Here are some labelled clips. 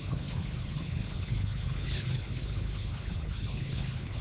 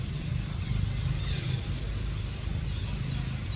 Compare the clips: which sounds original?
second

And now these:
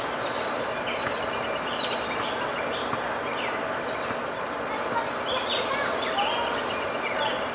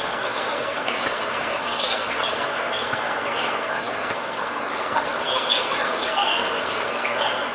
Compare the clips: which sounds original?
first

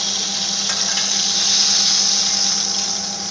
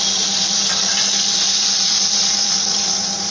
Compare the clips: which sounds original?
first